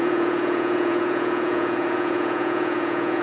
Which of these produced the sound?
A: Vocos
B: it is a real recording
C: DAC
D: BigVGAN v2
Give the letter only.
A